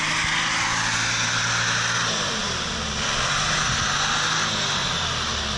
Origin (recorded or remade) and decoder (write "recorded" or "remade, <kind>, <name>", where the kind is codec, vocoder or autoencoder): recorded